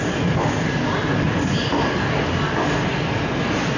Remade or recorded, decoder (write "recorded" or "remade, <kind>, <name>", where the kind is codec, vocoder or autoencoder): recorded